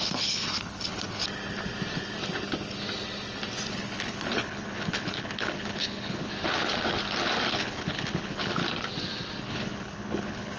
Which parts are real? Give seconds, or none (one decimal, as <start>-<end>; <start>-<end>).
1.2-3.7; 6.3-7.5; 8.6-9.4